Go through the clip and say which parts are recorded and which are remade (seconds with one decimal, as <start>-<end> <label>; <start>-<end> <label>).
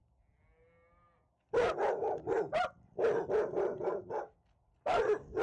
0.0-5.4 recorded